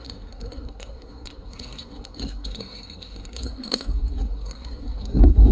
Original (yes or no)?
no